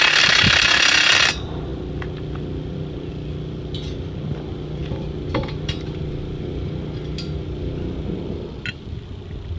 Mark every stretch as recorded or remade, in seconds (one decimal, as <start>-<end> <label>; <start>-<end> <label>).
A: 0.0-9.6 recorded